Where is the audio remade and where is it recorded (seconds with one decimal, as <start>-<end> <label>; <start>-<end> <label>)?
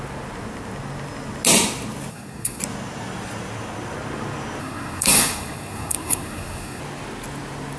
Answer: 0.0-2.1 recorded; 2.1-2.6 remade; 2.6-4.6 recorded; 4.6-6.8 remade; 6.8-7.8 recorded